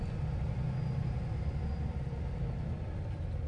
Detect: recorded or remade recorded